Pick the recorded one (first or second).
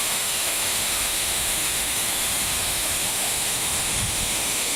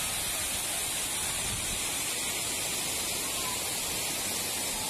second